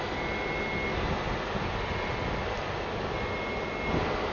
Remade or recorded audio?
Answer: recorded